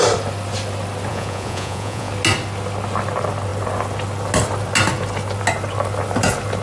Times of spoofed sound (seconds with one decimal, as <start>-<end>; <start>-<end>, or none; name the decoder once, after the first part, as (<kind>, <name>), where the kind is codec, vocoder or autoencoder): 1.1-2.1 (vocoder, Vocos)